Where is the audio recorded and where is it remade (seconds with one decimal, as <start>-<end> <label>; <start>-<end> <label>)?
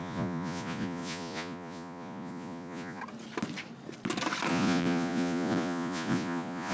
0.0-3.0 remade; 3.0-4.5 recorded; 4.5-6.7 remade